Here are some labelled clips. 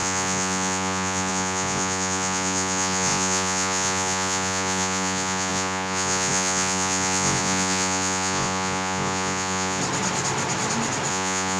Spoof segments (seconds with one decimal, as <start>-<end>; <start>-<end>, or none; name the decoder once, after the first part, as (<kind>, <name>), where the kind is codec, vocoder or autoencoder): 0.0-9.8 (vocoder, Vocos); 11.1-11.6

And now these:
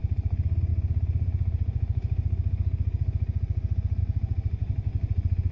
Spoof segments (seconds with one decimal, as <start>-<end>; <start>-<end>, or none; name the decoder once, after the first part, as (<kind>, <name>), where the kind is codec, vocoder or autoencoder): 0.7-4.0 (vocoder, BigVGAN v2)

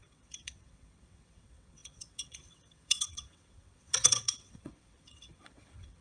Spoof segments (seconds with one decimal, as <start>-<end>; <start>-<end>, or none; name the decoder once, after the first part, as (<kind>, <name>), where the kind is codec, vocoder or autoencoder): 0.0-6.0 (vocoder, WaveNeXt)

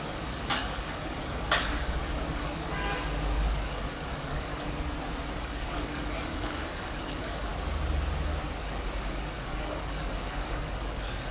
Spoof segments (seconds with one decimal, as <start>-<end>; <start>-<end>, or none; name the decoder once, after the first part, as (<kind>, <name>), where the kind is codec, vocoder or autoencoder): 0.0-4.5 (codec, DAC); 5.4-7.5; 8.6-11.3